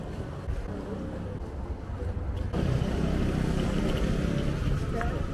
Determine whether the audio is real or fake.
real